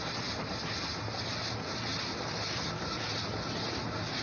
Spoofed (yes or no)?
no